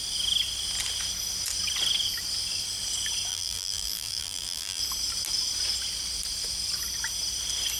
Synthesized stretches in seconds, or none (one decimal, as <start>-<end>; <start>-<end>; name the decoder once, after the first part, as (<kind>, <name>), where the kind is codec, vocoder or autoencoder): 3.3-4.8 (vocoder, BigVGAN v2)